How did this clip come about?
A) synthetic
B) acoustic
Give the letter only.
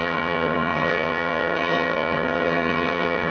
A